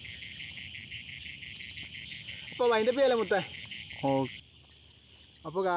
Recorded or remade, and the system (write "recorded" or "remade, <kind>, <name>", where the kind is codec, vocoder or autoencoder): recorded